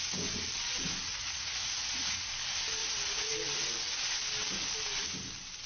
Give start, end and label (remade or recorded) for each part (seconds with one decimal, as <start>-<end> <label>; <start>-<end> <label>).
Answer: 0.0-1.1 recorded; 1.1-2.3 remade; 2.3-2.8 recorded; 2.8-3.3 remade; 3.3-5.7 recorded